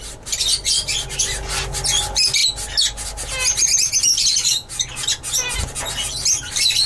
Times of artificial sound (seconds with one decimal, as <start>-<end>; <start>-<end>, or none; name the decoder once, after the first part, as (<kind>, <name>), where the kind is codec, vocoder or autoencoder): none